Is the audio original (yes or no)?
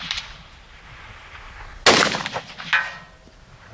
yes